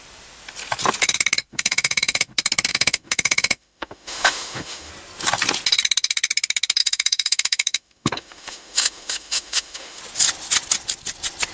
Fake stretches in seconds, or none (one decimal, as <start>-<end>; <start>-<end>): 1.5-2.3; 2.7-4.9; 6.8-10.0